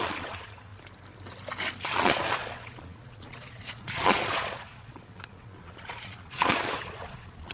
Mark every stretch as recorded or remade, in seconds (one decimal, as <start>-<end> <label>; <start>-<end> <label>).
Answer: 0.0-0.7 remade; 0.7-1.8 recorded; 1.8-7.5 remade